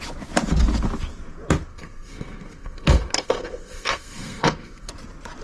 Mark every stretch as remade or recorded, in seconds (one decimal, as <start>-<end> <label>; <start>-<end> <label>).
0.0-1.7 recorded; 1.7-4.9 remade; 4.9-5.4 recorded